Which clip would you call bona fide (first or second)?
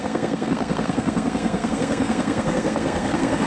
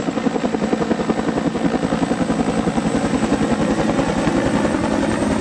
second